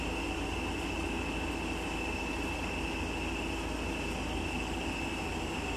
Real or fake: real